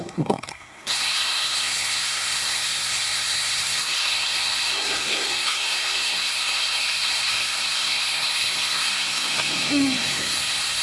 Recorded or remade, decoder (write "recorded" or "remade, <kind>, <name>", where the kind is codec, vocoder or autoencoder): remade, codec, SNAC